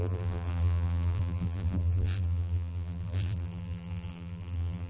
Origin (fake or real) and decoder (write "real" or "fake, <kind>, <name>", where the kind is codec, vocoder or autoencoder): fake, vocoder, BigVGAN v2